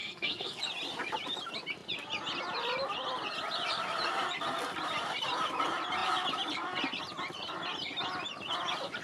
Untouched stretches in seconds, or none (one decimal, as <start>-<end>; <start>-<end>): 0.6-9.0

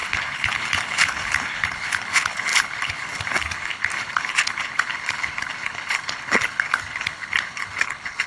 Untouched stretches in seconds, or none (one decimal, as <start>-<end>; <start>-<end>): none

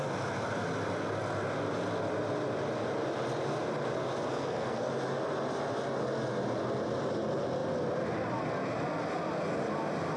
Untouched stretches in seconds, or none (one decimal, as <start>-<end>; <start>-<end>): 0.0-4.3; 4.9-10.2

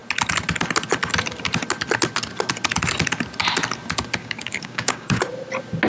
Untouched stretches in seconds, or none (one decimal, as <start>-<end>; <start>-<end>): 0.0-4.2; 5.2-5.9

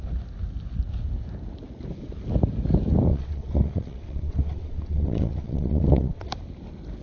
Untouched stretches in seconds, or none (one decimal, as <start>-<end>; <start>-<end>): 0.0-3.1; 6.3-7.0

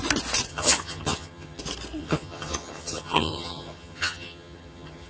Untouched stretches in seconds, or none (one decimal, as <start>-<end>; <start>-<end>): 0.0-0.5; 1.6-2.0

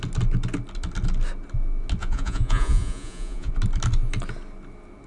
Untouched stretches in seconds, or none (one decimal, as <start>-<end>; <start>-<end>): 0.0-2.0; 3.5-5.1